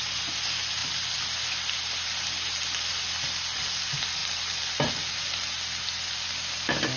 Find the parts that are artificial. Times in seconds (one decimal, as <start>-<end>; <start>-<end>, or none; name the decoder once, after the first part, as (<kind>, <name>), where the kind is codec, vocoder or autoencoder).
none